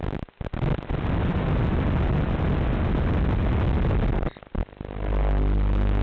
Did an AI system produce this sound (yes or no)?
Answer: no